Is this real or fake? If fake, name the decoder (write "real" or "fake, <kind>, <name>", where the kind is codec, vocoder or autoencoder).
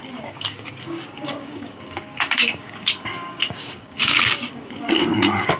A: fake, codec, DAC